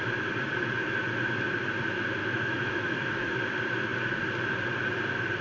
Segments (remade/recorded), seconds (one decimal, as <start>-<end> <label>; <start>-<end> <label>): 0.0-2.2 recorded; 2.2-3.4 remade; 3.4-5.4 recorded